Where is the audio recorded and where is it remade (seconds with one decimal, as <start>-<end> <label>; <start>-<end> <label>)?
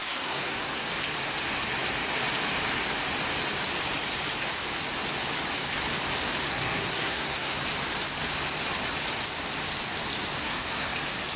0.0-0.9 remade; 0.9-6.5 recorded; 6.5-7.6 remade; 7.6-10.4 recorded; 10.4-10.9 remade; 10.9-11.4 recorded